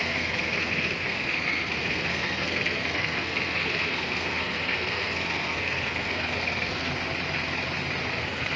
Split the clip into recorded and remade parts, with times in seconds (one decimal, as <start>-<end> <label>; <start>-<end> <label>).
0.0-6.9 remade; 6.9-8.1 recorded; 8.1-8.6 remade